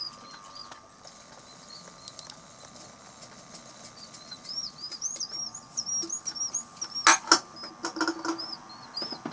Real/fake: real